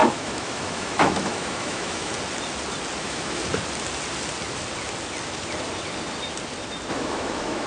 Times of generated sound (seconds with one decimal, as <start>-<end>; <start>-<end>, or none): 0.0-2.1; 3.0-3.4; 6.9-7.7